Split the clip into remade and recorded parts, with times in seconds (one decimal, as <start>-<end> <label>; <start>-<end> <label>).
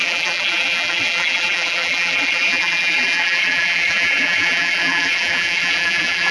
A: 0.0-6.3 remade